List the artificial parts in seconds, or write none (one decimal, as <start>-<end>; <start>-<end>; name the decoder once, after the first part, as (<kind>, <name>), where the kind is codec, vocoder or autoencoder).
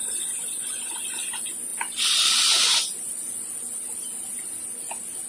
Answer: none